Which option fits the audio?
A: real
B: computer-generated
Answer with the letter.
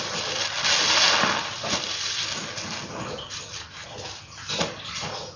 A